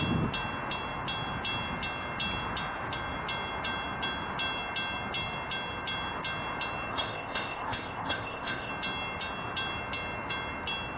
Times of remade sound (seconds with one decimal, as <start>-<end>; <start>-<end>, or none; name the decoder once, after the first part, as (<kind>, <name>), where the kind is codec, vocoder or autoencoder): 6.9-8.7 (codec, ZipCodec)